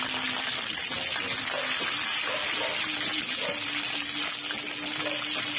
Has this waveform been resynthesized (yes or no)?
no